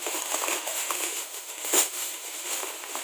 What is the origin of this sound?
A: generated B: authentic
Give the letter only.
A